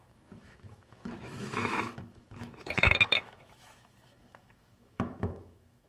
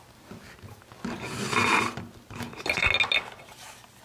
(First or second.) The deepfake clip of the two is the first